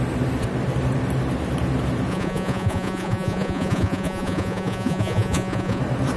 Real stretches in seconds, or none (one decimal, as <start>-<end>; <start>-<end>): 0.0-2.1; 5.8-6.2